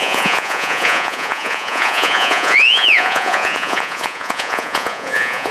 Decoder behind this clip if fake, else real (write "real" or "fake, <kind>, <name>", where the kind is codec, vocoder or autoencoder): fake, vocoder, Vocos